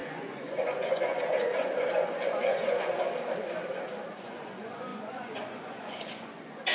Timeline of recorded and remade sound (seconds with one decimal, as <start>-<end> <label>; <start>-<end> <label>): 0.0-2.9 remade; 2.9-4.1 recorded; 4.1-6.7 remade